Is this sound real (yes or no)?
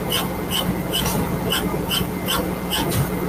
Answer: yes